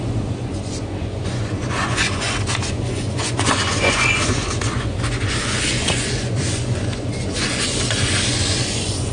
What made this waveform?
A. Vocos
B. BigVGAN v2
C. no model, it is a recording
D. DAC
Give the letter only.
A